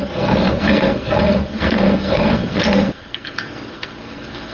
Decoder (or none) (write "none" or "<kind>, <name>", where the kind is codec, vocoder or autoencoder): codec, SNAC